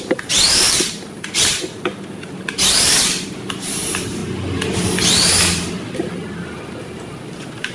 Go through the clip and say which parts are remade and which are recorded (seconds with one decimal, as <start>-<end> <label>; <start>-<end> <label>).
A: 0.0-1.7 remade; 1.7-2.9 recorded; 2.9-4.2 remade; 4.2-6.8 recorded; 6.8-7.7 remade